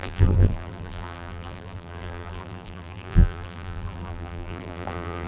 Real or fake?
fake